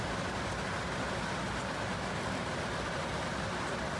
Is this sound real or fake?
real